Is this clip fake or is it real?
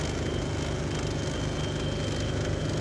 real